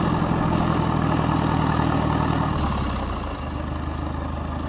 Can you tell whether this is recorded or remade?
recorded